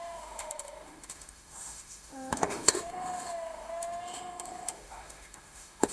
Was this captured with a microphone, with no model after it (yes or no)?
no